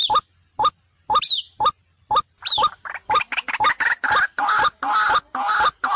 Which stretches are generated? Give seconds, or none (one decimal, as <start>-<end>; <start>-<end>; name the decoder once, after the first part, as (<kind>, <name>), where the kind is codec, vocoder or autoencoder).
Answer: none